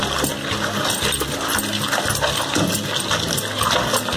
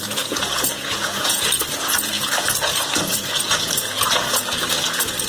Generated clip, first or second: second